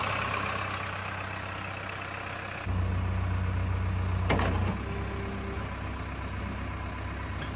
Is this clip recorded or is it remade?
recorded